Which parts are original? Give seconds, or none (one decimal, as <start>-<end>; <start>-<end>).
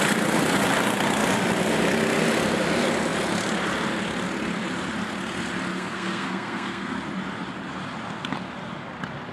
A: 0.0-5.7; 6.9-9.3